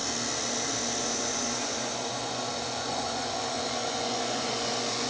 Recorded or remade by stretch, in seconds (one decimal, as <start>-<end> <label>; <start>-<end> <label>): 0.0-1.0 recorded; 1.0-5.1 remade